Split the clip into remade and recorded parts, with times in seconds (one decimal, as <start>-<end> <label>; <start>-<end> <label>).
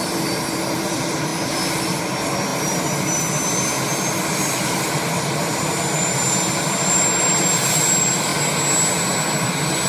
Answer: 0.0-1.3 remade; 1.3-2.0 recorded; 2.0-8.3 remade; 8.3-9.9 recorded